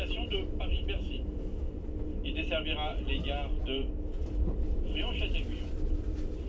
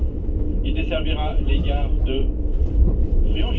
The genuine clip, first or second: first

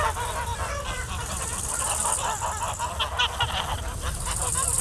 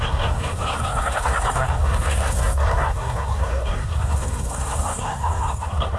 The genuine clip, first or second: first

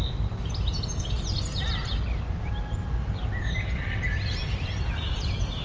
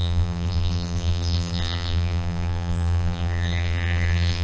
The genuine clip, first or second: first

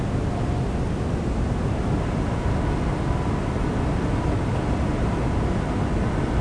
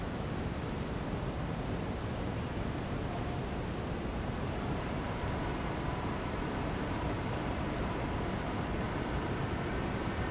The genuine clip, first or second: first